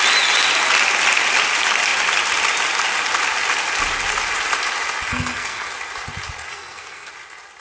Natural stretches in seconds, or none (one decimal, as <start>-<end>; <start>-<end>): 0.0-5.1; 5.7-6.5; 7.1-7.6